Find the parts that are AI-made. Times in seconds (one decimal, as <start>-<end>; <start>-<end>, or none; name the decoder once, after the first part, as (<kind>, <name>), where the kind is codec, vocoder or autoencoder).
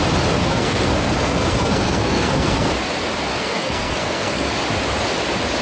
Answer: 0.4-2.7 (codec, SNAC); 3.3-4.5